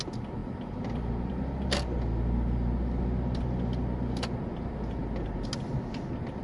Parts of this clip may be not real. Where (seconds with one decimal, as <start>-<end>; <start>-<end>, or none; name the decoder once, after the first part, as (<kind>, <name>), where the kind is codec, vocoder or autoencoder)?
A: none